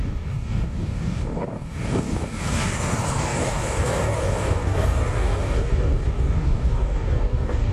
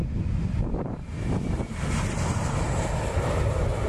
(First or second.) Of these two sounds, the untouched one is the second